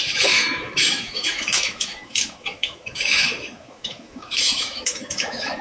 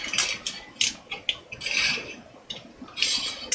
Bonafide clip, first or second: second